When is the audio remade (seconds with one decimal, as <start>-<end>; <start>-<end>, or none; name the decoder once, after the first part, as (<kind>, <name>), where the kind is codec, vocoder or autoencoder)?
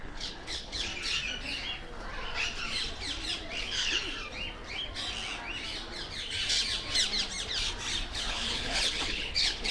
0.0-0.9 (codec, HILCodec); 3.6-4.0; 8.1-9.7